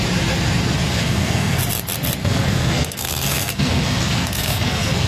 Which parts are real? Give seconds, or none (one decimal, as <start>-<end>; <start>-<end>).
0.0-0.9; 1.6-2.2